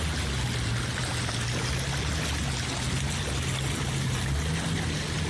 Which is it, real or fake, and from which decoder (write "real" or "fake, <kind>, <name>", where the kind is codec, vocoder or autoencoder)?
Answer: real